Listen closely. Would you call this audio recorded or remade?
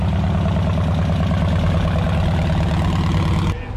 recorded